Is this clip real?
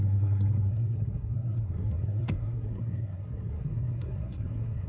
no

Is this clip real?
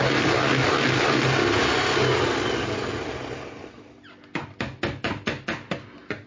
yes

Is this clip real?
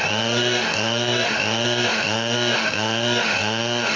no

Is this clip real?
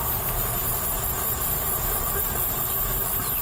yes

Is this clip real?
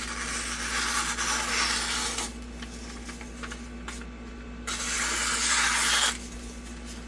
yes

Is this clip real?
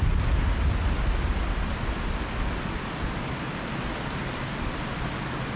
yes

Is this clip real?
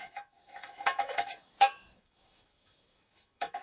no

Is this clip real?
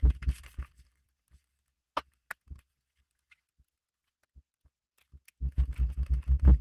yes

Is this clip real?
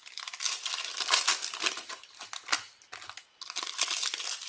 yes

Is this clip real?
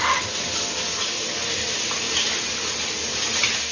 yes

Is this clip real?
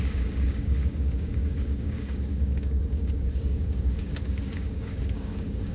no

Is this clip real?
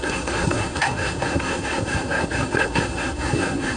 no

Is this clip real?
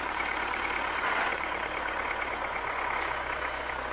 no